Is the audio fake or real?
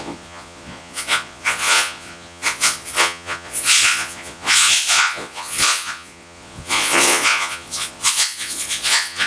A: fake